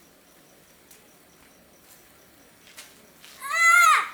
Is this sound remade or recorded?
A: recorded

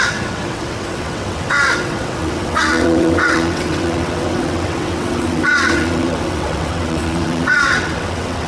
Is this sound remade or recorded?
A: remade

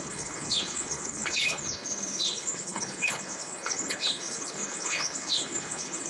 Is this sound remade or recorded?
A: remade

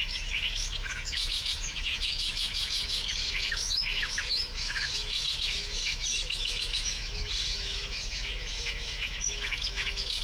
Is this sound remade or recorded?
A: remade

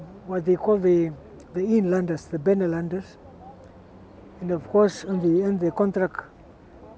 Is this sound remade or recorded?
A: recorded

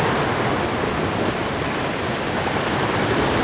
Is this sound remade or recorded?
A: recorded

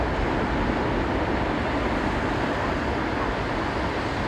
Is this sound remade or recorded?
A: recorded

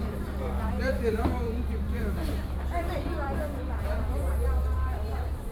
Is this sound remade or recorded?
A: remade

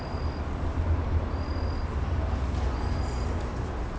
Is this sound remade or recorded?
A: recorded